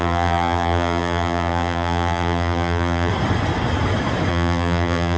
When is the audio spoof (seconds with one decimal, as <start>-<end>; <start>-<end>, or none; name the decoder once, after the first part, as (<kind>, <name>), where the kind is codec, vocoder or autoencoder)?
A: 0.0-3.1 (vocoder, BigVGAN v2); 4.3-5.2